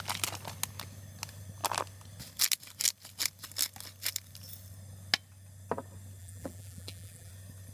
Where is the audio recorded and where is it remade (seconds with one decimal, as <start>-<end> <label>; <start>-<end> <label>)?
0.0-6.2 recorded; 6.2-7.3 remade; 7.3-7.7 recorded